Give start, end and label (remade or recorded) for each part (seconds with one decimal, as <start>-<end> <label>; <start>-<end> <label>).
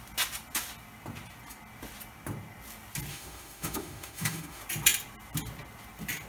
0.0-3.1 recorded; 3.1-4.6 remade; 4.6-6.3 recorded